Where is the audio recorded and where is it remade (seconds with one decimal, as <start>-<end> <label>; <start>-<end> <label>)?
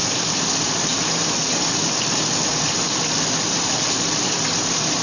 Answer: 0.0-0.5 recorded; 0.5-0.9 remade; 0.9-2.6 recorded; 2.6-5.0 remade